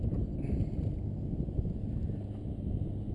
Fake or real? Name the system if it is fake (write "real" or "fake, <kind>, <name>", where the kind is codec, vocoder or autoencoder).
real